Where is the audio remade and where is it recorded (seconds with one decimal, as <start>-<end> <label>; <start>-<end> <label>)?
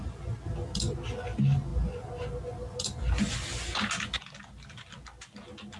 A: 0.0-5.8 recorded